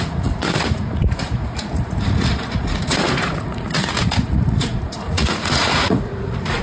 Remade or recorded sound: remade